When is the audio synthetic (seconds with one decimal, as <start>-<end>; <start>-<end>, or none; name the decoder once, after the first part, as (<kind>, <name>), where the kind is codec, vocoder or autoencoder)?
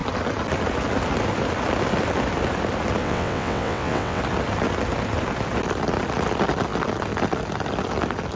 3.0-4.2 (vocoder, WaveNeXt)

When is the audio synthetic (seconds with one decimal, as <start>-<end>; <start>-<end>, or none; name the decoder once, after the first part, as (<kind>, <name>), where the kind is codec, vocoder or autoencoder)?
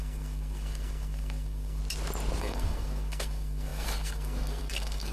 0.0-1.8 (codec, SNAC); 2.4-5.1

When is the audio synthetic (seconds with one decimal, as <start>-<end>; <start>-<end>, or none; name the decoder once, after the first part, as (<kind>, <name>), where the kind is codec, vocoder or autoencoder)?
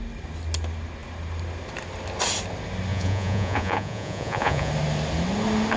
2.9-4.7 (vocoder, Vocos)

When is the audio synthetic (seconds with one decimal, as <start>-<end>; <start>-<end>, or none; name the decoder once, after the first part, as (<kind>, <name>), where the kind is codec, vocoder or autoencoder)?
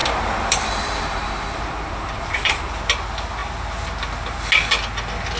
0.0-2.7 (vocoder, BigVGAN v2)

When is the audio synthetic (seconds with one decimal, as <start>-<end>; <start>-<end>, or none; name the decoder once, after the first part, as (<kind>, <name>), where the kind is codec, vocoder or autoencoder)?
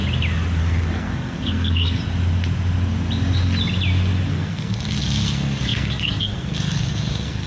0.6-2.0 (codec, SNAC); 4.3-7.5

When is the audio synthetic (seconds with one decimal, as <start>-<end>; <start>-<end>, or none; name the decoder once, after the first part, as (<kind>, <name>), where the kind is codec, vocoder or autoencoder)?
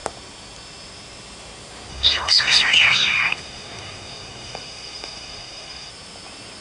1.9-5.9 (codec, SNAC)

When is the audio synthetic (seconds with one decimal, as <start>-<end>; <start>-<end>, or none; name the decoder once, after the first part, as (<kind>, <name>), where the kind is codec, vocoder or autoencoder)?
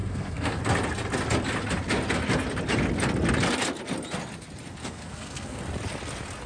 0.0-0.6 (codec, SNAC); 4.8-5.6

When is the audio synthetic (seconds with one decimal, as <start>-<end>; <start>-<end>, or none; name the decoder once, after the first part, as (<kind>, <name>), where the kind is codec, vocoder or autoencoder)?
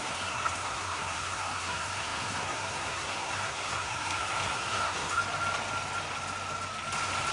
0.0-5.2 (codec, SNAC)